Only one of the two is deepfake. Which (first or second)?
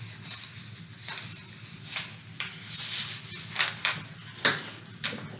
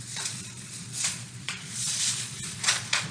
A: second